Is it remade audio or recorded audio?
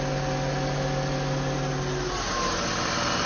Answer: recorded